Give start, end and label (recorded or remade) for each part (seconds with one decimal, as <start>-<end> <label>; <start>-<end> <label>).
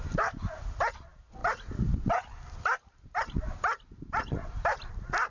0.0-5.3 recorded